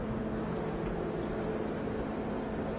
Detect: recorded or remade recorded